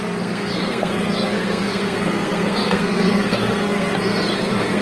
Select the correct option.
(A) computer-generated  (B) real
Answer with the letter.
A